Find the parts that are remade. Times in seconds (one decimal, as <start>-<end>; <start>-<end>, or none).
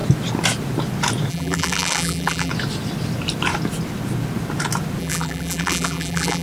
1.3-2.5; 5.0-6.4